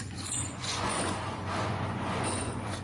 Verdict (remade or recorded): remade